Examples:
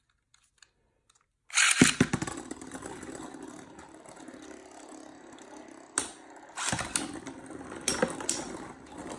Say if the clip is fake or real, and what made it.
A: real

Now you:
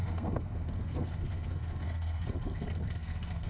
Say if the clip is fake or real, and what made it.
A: fake, codec, SNAC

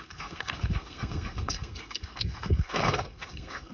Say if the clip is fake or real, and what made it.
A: fake, codec, SNAC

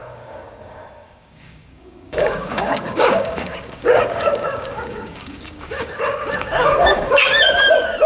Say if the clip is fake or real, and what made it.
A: fake, codec, DAC